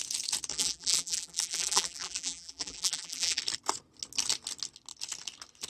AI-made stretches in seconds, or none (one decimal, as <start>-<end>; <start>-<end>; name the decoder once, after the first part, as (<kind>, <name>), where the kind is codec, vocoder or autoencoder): 0.5-3.4 (vocoder, BigVGAN v2)